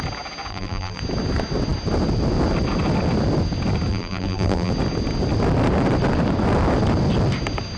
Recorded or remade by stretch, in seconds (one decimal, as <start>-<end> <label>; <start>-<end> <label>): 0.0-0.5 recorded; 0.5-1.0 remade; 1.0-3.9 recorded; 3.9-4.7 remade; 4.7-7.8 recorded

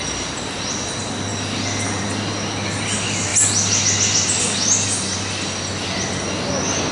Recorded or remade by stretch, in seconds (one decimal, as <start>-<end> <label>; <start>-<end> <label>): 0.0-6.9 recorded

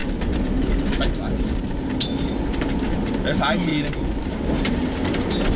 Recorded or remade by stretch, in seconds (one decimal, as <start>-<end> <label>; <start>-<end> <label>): 0.0-5.6 recorded